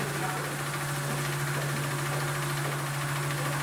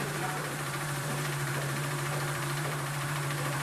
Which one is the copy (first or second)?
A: second